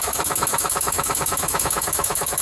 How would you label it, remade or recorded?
remade